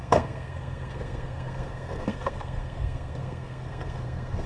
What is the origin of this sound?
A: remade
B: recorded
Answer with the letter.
A